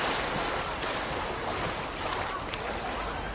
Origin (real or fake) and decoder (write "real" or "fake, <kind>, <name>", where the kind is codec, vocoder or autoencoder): real